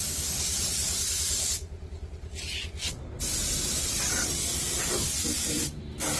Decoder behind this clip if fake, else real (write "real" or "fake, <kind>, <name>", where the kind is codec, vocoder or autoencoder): real